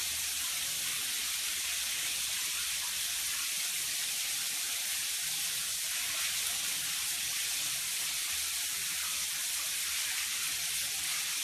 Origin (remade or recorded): recorded